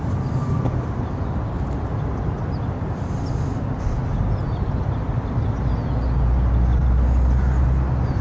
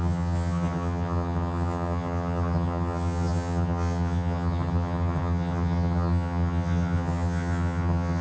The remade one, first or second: second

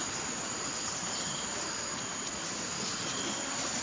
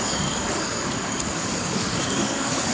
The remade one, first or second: second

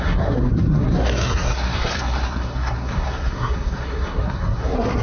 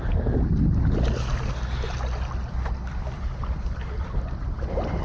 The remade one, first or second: first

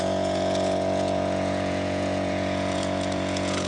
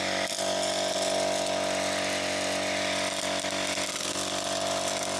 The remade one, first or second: first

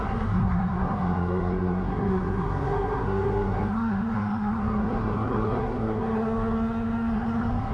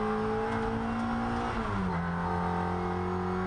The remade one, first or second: first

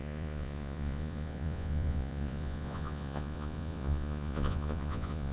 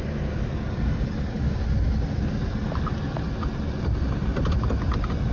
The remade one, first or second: first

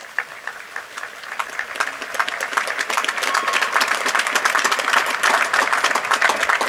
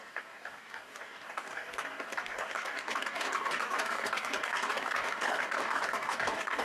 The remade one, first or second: second